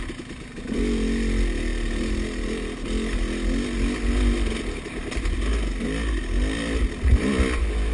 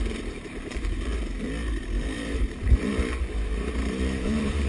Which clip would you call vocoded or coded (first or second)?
second